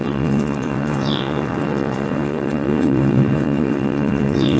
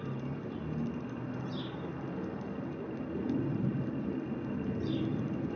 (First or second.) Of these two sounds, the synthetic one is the first